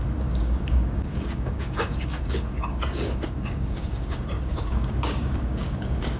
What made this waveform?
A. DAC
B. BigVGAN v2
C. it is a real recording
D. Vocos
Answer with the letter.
A